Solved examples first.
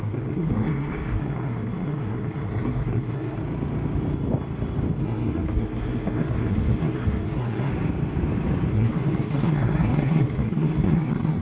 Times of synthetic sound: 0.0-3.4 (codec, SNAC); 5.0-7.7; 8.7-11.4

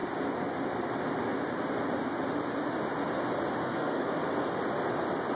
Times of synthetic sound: 3.6-4.2 (codec, SNAC)